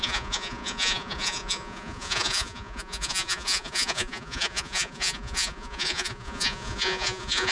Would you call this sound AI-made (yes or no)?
yes